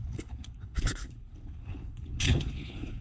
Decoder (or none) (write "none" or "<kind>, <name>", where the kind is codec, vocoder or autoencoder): codec, HILCodec